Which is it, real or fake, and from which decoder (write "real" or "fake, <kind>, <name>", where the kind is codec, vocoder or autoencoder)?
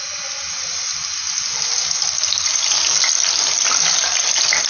real